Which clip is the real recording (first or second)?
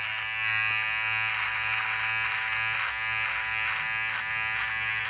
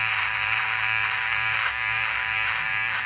first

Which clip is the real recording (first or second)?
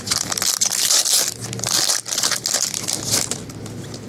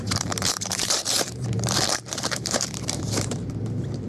first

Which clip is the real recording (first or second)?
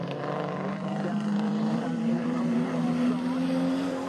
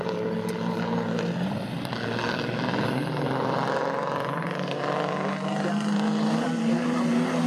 second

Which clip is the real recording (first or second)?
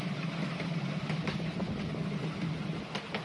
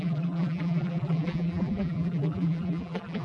first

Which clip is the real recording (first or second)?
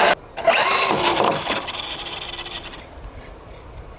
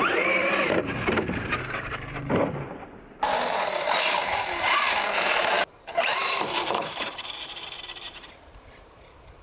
first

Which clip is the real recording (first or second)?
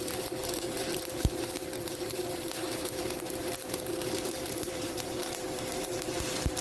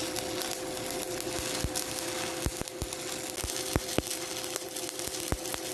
second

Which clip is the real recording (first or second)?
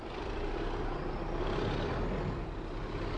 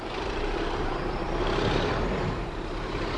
first